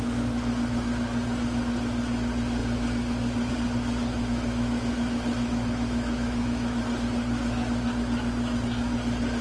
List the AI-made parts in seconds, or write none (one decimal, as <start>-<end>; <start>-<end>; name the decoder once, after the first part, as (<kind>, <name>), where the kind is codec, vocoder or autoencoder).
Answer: 4.1-6.8 (autoencoder, DAC-VAE)